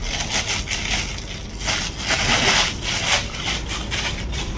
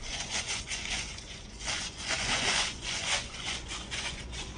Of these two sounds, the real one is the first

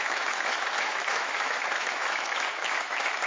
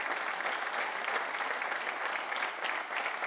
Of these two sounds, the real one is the second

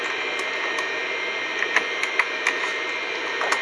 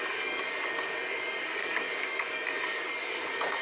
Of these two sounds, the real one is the first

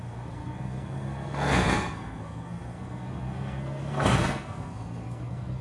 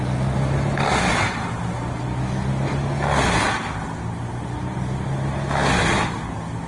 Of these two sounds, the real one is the second